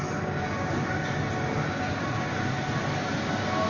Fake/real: real